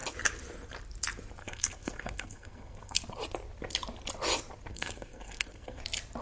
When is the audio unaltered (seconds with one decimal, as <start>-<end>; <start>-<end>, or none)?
0.0-1.4; 3.0-4.7; 5.8-6.2